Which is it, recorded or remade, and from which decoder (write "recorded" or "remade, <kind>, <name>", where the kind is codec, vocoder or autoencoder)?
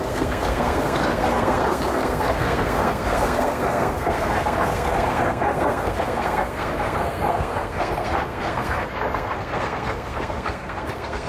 remade, codec, SNAC